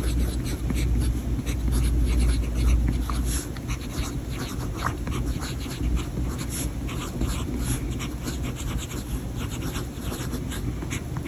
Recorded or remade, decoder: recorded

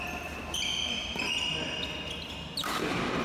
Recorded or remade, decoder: recorded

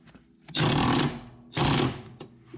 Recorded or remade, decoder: recorded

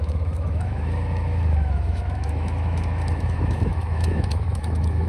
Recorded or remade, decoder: remade, autoencoder, DAC-VAE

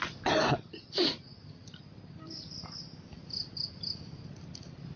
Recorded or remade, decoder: recorded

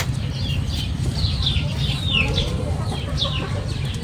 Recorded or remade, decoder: recorded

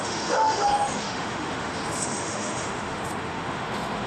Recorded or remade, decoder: remade, autoencoder, DAC-VAE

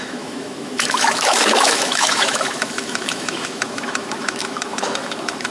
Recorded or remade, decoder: remade, autoencoder, DAC-VAE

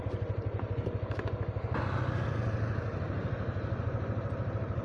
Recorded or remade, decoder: recorded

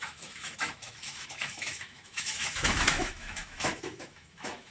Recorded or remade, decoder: remade, autoencoder, DAC-VAE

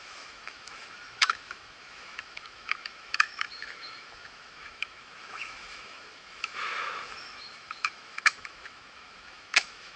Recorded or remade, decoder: remade, autoencoder, DAC-VAE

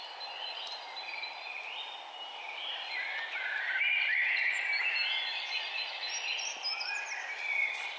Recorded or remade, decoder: recorded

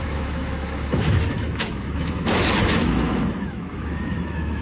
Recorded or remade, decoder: remade, autoencoder, DAC-VAE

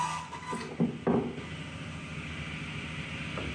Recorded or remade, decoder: recorded